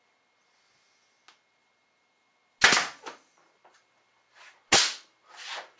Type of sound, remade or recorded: recorded